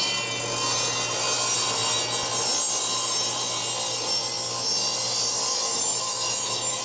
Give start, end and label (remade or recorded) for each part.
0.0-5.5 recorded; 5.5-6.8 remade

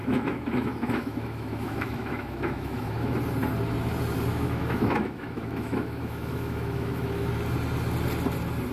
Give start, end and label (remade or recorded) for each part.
0.0-3.2 remade; 3.2-4.3 recorded; 4.3-7.3 remade; 7.3-8.7 recorded